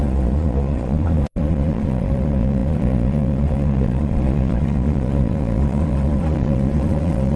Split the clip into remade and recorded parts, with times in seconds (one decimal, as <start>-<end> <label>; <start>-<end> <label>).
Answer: 0.0-7.4 remade